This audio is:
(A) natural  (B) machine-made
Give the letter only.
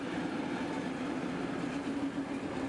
A